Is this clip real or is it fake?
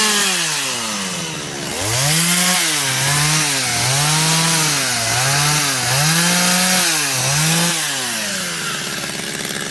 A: real